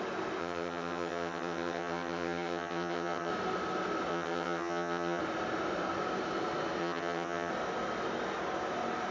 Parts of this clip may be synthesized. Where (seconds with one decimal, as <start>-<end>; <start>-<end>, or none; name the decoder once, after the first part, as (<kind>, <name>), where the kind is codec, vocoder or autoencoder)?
0.4-3.3 (vocoder, HiFi-GAN); 4.1-5.2; 6.8-7.5